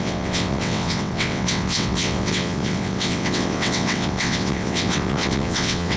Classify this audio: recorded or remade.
remade